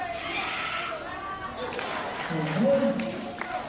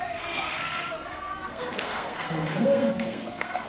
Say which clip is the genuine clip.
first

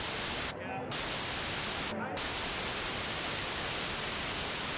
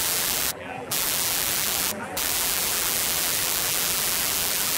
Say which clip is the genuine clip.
first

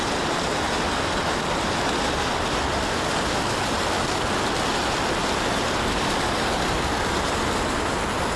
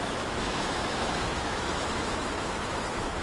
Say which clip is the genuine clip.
first